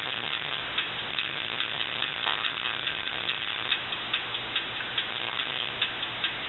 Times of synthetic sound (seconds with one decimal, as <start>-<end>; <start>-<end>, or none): 0.0-0.6; 1.1-3.7; 5.1-5.7